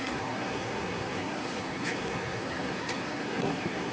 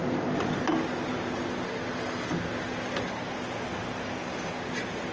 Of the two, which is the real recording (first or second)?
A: second